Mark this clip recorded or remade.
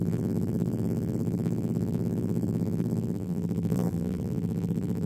remade